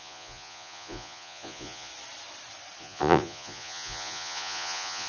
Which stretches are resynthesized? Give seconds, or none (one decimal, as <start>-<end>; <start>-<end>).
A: 0.0-1.9; 2.8-5.1